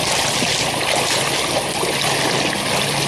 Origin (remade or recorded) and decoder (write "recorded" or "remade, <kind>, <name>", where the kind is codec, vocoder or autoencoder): recorded